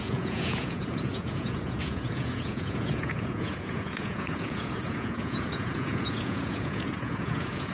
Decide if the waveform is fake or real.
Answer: fake